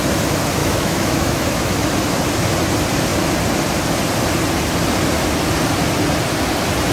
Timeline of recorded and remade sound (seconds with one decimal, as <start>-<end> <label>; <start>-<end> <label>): 0.0-0.6 recorded; 0.6-1.9 remade; 1.9-6.9 recorded